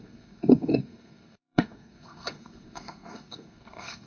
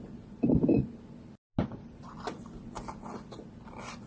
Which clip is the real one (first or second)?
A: second